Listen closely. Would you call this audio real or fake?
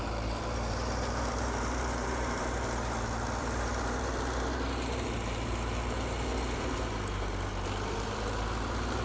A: fake